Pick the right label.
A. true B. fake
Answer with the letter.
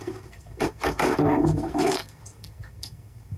B